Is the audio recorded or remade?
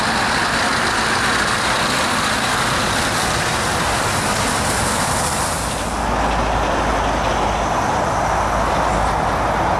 recorded